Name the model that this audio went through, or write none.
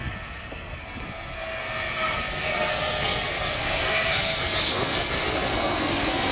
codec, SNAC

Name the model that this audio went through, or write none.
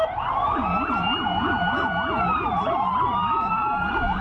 vocoder, BigVGAN v2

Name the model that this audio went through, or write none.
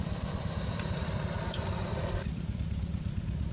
vocoder, BigVGAN v2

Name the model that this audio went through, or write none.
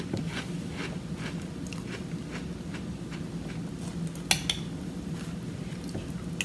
none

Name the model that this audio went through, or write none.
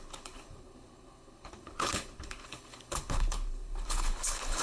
codec, HILCodec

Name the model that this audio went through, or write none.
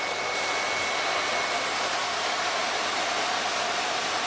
vocoder, BigVGAN v2